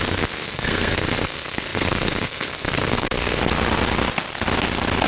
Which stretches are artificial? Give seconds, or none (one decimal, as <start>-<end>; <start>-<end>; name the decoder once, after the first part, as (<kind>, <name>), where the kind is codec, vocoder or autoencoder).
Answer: 0.0-3.4 (codec, SNAC)